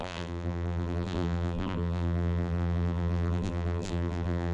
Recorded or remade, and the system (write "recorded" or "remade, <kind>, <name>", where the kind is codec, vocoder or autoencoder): remade, vocoder, BigVGAN v2